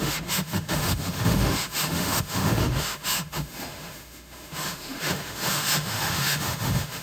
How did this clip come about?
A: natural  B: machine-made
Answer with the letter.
B